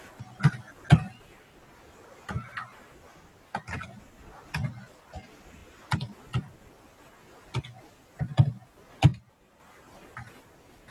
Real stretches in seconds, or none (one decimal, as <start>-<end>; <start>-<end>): 0.0-9.1; 9.6-10.9